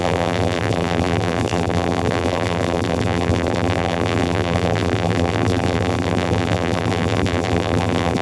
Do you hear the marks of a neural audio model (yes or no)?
yes